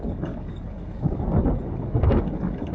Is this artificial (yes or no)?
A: yes